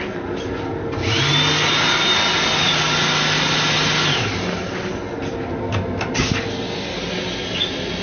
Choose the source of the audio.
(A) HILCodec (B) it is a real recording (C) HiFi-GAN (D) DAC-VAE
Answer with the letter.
B